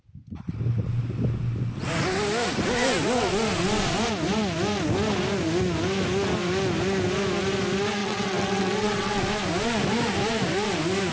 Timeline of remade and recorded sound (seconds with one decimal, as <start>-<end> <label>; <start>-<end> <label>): 0.0-8.0 recorded; 8.0-9.2 remade; 9.2-11.1 recorded